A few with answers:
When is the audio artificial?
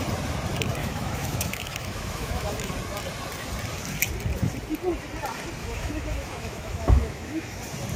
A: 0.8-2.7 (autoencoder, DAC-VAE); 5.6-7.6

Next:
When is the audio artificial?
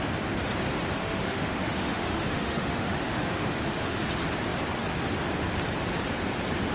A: 1.0-4.0 (autoencoder, DAC-VAE)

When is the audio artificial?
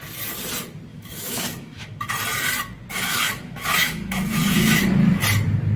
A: 0.9-2.0 (autoencoder, DAC-VAE); 2.9-4.9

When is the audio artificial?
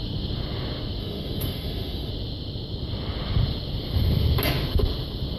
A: 1.0-2.1 (autoencoder, DAC-VAE)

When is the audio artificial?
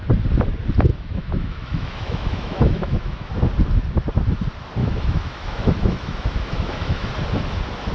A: 0.9-3.3 (autoencoder, DAC-VAE); 4.8-7.1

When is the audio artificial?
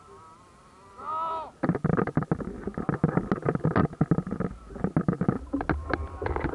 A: none